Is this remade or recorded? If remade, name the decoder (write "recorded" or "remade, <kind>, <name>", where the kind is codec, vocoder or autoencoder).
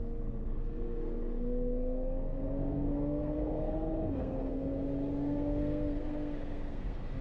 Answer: remade, codec, SNAC